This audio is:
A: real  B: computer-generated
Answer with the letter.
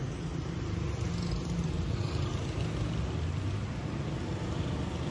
A